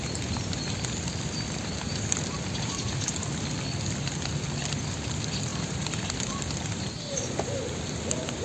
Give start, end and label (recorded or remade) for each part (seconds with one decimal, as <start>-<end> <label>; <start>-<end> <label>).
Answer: 0.0-5.5 recorded; 5.5-7.6 remade; 7.6-8.4 recorded